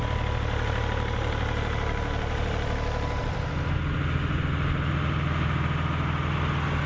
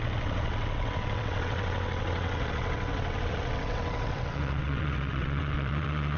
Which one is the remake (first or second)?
second